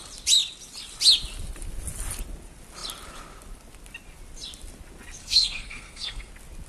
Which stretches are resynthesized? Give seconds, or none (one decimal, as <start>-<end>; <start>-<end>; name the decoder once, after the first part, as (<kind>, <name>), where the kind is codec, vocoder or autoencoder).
5.2-6.3 (codec, SNAC)